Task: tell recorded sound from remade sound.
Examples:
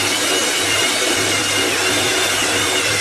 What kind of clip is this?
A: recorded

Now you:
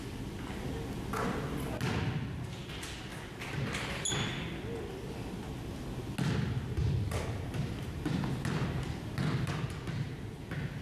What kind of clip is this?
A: recorded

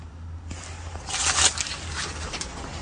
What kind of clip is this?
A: recorded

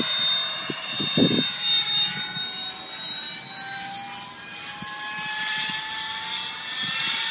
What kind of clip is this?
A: recorded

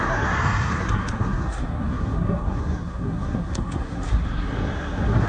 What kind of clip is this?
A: remade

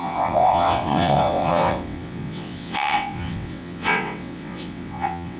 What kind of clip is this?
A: remade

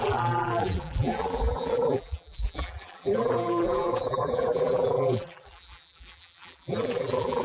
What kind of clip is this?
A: remade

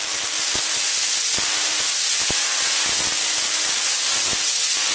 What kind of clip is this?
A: recorded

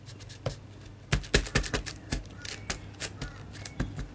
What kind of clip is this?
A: recorded